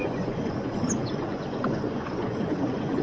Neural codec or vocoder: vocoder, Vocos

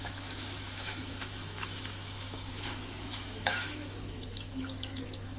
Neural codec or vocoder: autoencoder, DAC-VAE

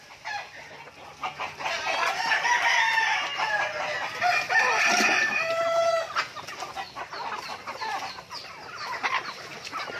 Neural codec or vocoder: none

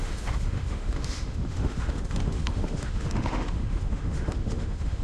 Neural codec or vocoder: autoencoder, DAC-VAE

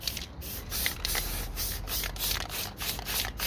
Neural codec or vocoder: none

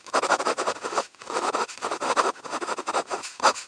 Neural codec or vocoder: autoencoder, DAC-VAE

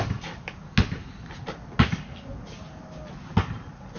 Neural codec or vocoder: none